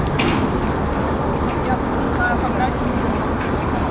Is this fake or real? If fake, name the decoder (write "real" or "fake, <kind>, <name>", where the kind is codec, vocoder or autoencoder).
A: real